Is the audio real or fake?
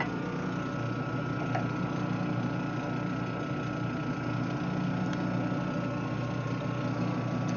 real